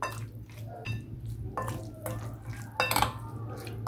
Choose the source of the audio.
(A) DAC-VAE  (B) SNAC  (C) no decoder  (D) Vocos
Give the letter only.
C